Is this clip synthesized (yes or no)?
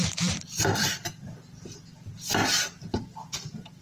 yes